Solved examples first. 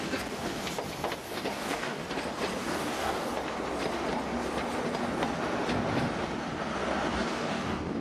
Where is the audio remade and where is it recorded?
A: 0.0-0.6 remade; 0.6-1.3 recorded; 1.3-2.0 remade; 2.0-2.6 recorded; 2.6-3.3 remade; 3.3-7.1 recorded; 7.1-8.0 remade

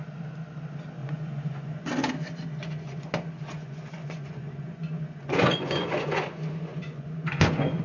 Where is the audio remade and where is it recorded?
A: 0.0-1.0 recorded; 1.0-1.9 remade; 1.9-2.6 recorded; 2.6-3.1 remade; 3.1-3.5 recorded; 3.5-7.8 remade